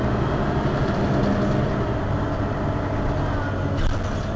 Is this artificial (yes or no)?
no